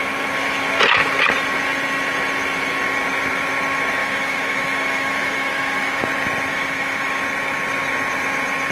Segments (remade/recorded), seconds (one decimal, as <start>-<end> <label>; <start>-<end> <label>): 0.0-4.0 recorded; 4.0-6.0 remade; 6.0-6.5 recorded; 6.5-7.2 remade; 7.2-8.7 recorded